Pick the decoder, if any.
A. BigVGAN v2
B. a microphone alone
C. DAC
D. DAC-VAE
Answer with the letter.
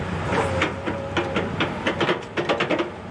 B